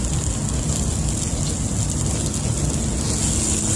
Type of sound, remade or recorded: recorded